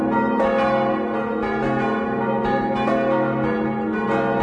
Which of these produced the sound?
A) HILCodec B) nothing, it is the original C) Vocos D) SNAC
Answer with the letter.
B